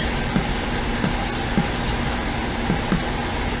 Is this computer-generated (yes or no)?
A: no